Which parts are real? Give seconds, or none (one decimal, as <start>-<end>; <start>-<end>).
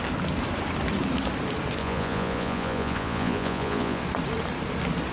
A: 0.0-1.8; 4.0-5.1